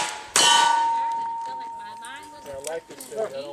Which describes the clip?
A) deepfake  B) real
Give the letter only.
B